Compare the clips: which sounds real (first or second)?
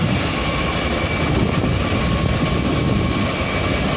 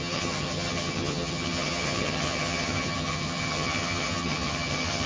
first